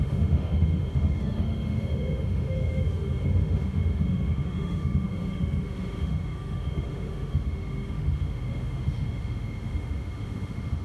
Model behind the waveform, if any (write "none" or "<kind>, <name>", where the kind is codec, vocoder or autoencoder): autoencoder, DAC-VAE